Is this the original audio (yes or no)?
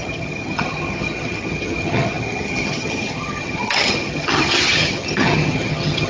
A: no